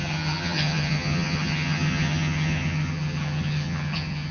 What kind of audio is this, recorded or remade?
remade